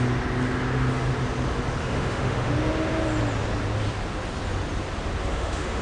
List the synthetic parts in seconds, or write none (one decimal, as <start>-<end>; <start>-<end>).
1.8-2.5; 5.3-5.8